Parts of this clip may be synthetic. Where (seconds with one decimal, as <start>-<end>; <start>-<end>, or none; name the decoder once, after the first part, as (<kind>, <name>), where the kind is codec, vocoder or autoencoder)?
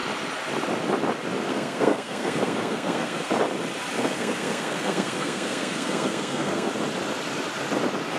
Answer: 1.4-3.3 (codec, SNAC); 4.0-6.7